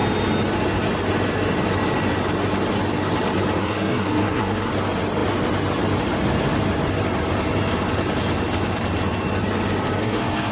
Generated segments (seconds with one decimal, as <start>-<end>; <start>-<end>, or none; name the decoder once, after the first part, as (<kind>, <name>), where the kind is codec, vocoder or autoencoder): 3.6-4.7 (codec, SNAC); 10.0-10.5